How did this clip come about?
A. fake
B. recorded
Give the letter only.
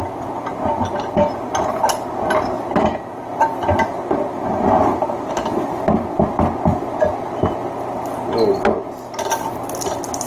B